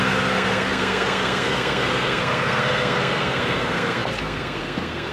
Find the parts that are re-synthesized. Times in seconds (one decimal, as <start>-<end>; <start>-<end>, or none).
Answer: 0.0-5.1